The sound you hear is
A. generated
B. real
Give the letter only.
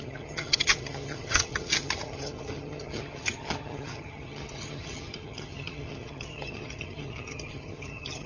A